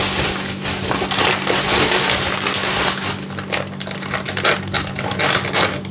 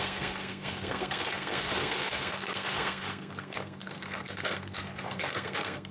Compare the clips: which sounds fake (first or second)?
second